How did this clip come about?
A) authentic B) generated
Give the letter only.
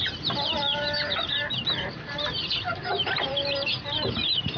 A